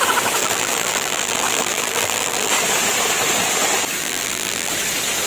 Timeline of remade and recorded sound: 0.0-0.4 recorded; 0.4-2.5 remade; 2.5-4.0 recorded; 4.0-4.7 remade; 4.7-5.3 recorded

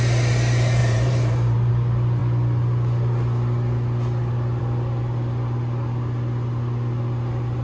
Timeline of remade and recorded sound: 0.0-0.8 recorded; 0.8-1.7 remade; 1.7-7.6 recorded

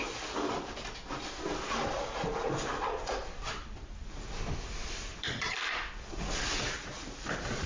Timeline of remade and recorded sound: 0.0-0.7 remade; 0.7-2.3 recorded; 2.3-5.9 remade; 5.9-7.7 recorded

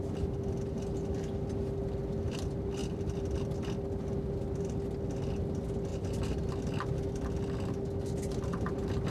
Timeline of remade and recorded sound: 0.0-9.1 recorded